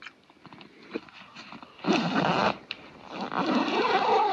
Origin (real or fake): real